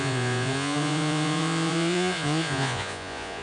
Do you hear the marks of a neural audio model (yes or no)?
yes